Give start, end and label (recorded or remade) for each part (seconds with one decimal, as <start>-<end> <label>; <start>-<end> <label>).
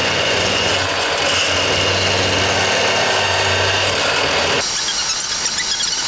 0.0-1.1 remade; 1.1-6.1 recorded